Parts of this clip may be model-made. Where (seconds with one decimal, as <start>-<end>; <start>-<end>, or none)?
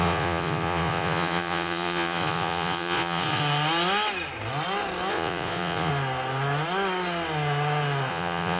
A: 0.0-3.4; 5.1-5.9; 8.1-8.6